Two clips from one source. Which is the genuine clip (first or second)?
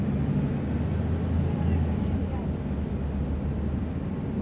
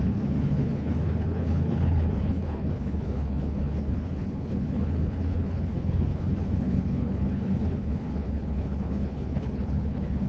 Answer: first